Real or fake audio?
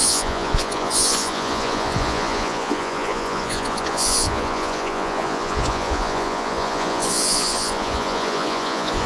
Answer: fake